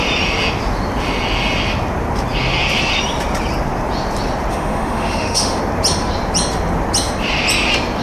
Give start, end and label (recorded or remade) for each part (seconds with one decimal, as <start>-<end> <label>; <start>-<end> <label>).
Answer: 0.0-4.5 recorded; 4.5-5.6 remade; 5.6-8.0 recorded